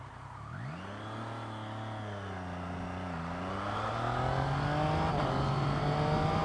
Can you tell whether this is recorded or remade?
recorded